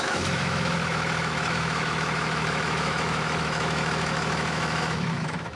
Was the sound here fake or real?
fake